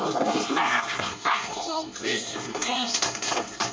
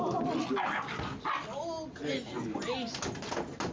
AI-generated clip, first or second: first